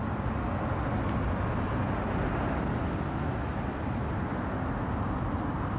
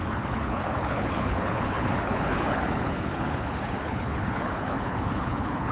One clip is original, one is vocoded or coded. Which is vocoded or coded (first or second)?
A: second